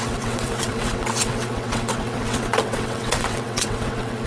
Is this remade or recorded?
remade